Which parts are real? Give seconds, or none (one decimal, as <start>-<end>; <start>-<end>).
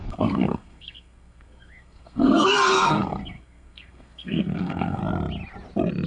5.0-6.1